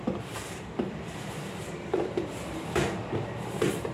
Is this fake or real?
fake